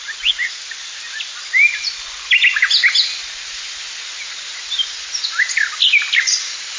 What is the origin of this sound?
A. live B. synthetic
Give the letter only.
A